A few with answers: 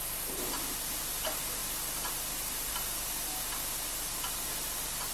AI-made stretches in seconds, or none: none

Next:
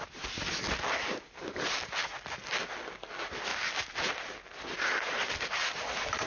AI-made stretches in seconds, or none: none